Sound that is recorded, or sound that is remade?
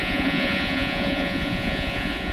remade